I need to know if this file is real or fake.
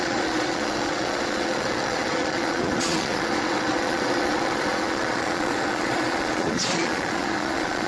fake